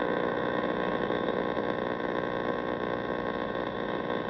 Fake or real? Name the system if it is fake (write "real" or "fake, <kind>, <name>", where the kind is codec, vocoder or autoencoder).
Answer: real